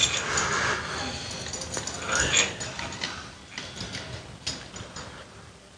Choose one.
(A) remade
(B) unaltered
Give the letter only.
B